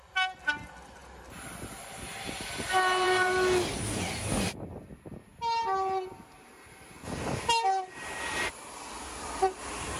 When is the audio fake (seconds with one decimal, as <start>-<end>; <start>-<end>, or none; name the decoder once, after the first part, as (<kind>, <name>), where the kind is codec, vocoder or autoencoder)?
1.0-3.3 (vocoder, BigVGAN v2)